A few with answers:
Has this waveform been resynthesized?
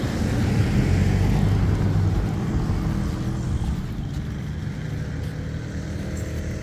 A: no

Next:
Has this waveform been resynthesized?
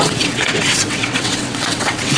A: yes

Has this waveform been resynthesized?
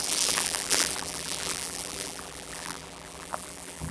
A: yes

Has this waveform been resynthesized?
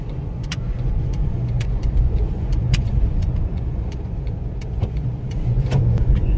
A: yes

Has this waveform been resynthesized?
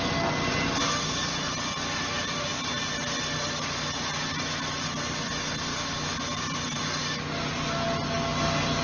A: no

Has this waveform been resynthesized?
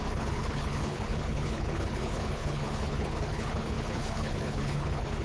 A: yes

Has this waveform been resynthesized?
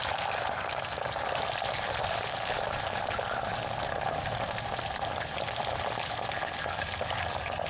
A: no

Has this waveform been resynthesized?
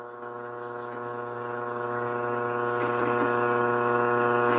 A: no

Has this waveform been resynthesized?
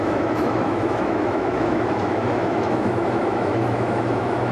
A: yes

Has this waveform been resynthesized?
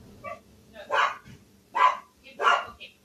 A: no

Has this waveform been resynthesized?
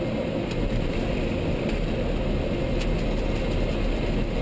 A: no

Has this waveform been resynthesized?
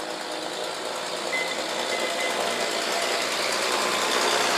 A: no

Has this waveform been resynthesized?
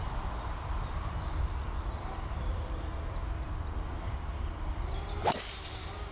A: yes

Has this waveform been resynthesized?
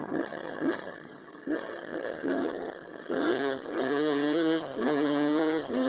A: yes